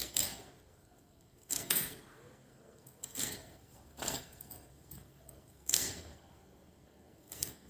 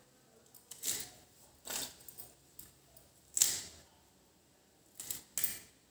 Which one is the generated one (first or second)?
first